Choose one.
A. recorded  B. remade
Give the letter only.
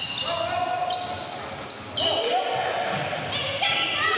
A